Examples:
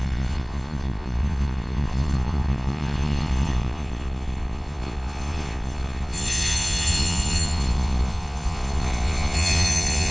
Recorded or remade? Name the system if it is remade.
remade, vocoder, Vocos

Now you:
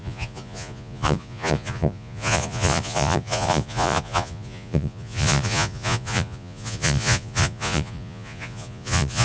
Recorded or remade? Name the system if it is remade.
remade, vocoder, Vocos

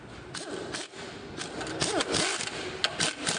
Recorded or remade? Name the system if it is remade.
recorded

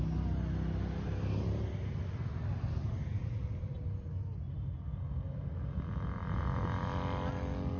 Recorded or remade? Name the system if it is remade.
recorded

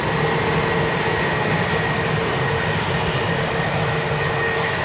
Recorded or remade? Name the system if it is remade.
recorded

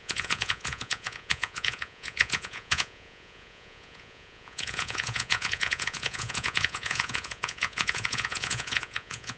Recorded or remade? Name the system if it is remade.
remade, vocoder, Vocos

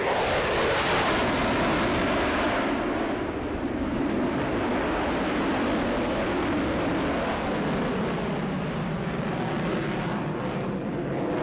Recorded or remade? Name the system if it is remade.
recorded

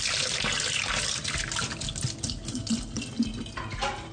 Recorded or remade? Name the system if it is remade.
recorded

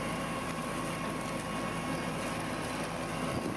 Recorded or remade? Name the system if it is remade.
recorded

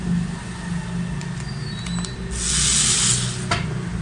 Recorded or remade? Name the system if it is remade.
recorded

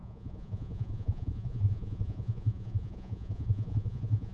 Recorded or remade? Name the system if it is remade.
remade, vocoder, Vocos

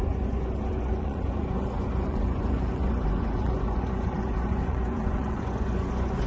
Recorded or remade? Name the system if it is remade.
remade, vocoder, Vocos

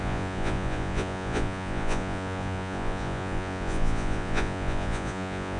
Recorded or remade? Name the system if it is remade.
remade, vocoder, Vocos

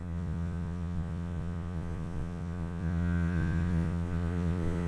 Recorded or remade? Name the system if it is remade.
remade, vocoder, Vocos